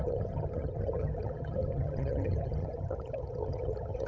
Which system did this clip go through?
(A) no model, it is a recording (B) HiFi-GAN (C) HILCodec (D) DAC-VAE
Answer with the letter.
B